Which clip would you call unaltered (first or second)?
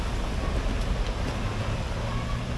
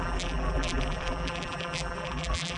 first